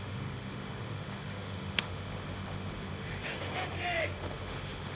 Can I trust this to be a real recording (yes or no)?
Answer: no